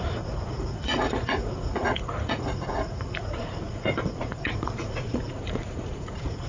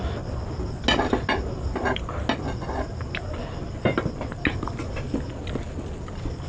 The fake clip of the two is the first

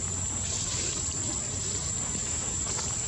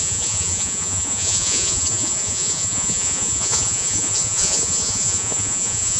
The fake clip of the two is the second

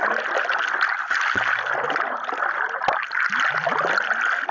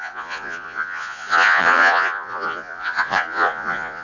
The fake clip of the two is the second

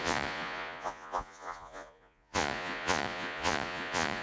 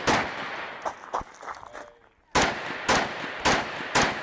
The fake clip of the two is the first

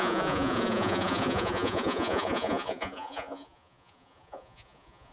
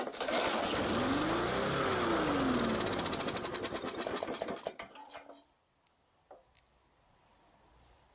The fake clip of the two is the first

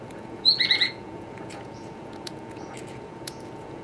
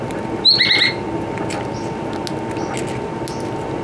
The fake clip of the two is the first